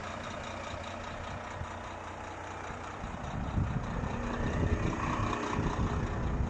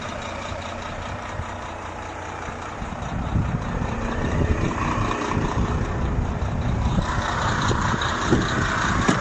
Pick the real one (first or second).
first